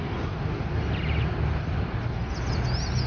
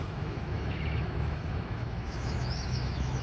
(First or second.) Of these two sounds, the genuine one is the first